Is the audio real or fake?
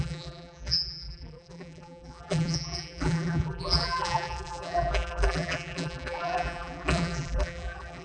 fake